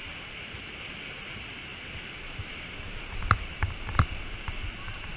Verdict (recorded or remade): recorded